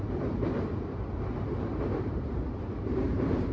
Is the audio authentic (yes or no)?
no